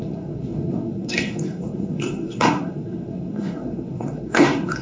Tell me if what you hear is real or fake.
fake